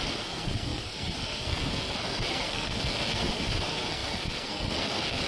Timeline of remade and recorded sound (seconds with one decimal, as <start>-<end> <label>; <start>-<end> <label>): 0.0-5.3 remade